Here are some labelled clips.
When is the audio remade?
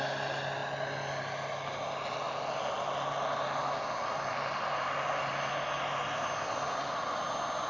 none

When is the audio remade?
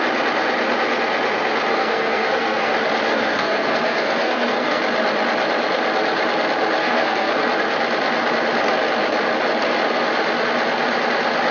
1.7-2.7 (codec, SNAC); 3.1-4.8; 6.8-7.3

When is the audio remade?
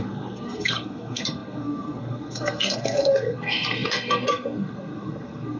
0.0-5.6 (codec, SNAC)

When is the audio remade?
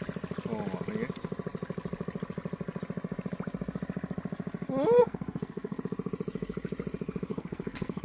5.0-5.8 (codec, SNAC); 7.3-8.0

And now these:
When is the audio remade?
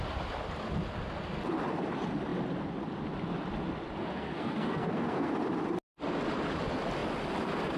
4.0-5.3 (codec, SNAC)